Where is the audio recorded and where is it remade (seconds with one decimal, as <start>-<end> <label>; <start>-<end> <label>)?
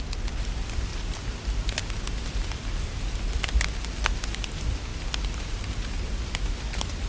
0.0-7.1 recorded